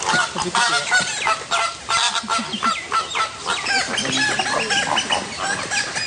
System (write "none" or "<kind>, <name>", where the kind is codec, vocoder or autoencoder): none